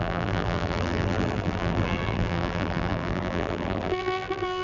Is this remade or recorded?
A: remade